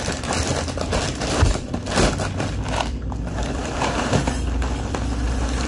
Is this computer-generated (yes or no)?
yes